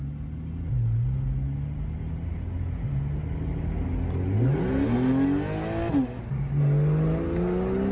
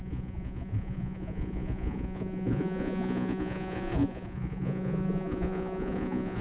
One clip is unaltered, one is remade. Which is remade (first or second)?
second